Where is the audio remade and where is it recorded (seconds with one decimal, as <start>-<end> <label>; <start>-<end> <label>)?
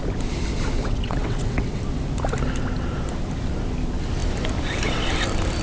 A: 0.0-0.8 recorded; 0.8-1.8 remade; 1.8-5.6 recorded